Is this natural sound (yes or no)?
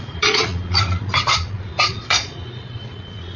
no